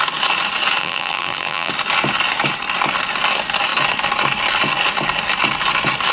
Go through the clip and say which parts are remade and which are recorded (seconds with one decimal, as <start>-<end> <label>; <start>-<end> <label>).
0.0-0.8 recorded; 0.8-1.7 remade; 1.7-6.1 recorded